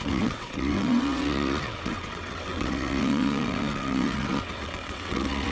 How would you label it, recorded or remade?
remade